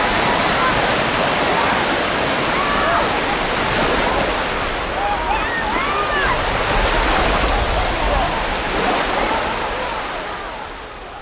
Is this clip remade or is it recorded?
recorded